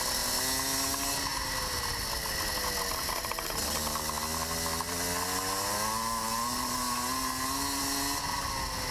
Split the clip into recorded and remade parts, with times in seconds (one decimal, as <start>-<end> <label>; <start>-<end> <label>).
0.0-8.9 recorded